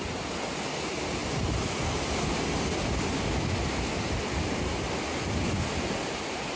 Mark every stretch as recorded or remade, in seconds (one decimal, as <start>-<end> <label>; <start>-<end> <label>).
0.0-6.6 recorded